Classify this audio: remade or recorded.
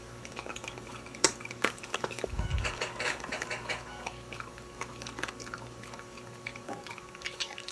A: remade